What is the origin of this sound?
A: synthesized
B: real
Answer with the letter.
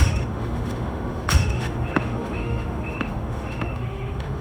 A